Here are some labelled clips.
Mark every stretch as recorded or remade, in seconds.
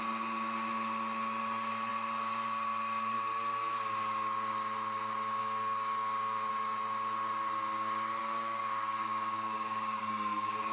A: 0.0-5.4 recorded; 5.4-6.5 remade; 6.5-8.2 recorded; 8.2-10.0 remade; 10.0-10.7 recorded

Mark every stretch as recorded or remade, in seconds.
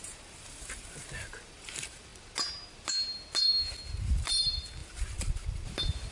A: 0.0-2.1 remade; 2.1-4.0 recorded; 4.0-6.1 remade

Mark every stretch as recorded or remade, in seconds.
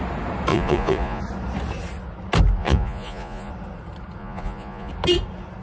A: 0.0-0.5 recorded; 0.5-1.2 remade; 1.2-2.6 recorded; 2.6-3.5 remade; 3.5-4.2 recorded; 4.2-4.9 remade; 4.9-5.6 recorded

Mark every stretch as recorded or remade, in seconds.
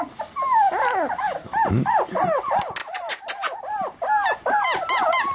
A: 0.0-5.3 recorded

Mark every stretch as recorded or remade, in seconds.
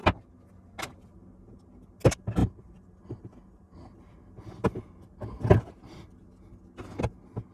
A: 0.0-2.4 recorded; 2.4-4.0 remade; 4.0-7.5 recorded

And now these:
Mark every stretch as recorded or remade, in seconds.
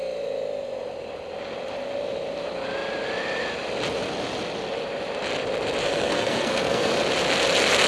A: 0.0-5.8 recorded; 5.8-6.9 remade; 6.9-7.9 recorded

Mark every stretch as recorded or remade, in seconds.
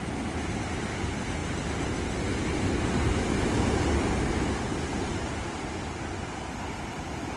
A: 0.0-7.4 recorded